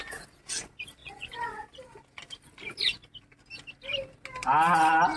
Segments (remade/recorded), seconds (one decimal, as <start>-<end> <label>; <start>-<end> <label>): 0.0-1.0 recorded; 1.0-1.6 remade; 1.6-5.2 recorded